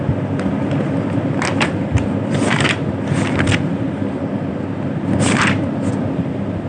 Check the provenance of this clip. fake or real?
real